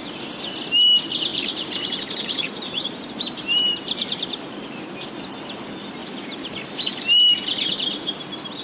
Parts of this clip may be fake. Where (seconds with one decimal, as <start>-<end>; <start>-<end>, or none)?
1.3-4.8; 6.0-6.5